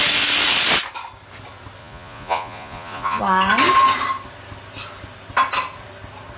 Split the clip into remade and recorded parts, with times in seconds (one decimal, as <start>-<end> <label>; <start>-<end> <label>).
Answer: 0.0-1.8 recorded; 1.8-3.2 remade; 3.2-6.4 recorded